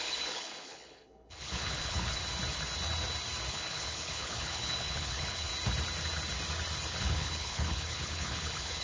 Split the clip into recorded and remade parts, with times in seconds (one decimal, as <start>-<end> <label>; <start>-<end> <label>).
0.0-2.2 remade; 2.2-3.5 recorded; 3.5-5.5 remade; 5.5-7.0 recorded; 7.0-8.8 remade